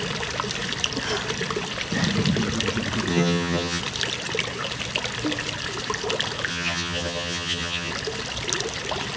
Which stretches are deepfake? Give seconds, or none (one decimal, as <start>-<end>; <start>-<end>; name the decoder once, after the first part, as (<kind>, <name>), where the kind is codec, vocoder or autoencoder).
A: 3.1-3.8 (vocoder, HiFi-GAN); 6.5-7.9